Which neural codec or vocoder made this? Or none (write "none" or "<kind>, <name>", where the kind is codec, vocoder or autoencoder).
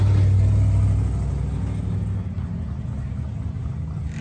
none